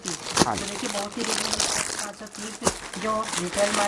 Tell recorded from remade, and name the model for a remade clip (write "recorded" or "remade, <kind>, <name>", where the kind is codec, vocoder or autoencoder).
recorded